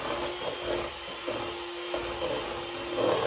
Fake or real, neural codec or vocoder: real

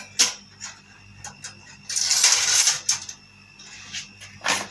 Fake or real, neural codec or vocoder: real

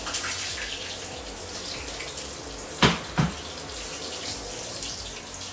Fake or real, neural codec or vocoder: real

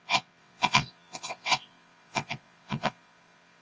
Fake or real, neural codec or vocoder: fake, vocoder, WaveNeXt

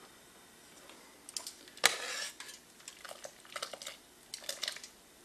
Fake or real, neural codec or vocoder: real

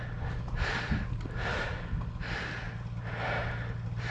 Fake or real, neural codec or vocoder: real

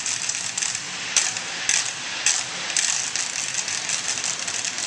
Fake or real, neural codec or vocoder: real